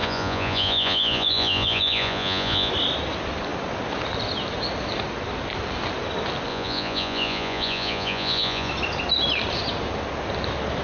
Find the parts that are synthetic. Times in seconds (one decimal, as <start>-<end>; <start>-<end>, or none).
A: 0.0-2.7; 6.5-8.7

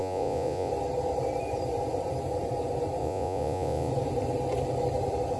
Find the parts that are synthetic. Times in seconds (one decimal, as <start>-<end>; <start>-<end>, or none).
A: 0.0-0.7; 3.0-3.9

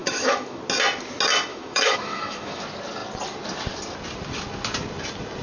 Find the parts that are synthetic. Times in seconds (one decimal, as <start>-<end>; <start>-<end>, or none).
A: 0.0-0.6; 1.5-2.6

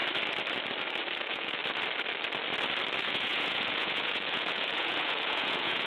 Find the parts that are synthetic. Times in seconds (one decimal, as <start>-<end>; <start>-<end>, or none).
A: 1.2-1.6; 3.0-5.9

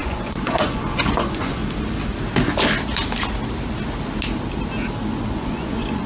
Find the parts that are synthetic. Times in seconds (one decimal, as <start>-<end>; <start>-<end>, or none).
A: 0.0-1.6; 5.3-6.1

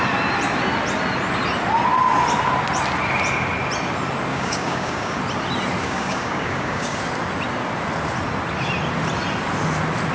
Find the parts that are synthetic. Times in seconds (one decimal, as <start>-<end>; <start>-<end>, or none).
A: 4.3-5.2; 5.8-7.0